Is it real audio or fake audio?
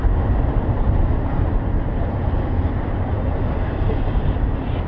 real